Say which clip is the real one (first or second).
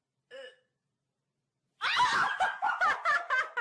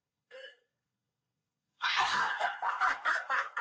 first